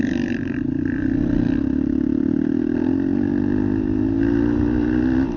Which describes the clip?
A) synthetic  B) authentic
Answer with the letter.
B